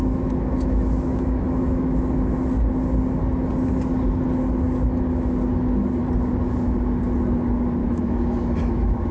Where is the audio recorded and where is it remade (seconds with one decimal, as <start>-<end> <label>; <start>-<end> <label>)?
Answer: 0.0-2.0 remade; 2.0-7.8 recorded; 7.8-9.1 remade